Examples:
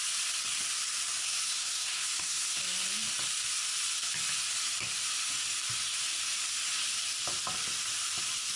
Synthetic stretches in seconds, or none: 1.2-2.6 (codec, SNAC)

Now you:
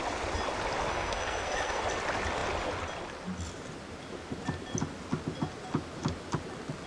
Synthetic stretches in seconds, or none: 0.9-1.8 (codec, SNAC)

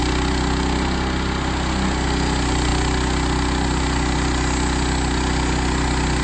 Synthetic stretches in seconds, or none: none